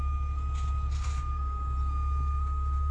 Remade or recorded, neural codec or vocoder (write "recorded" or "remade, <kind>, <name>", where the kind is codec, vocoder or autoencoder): recorded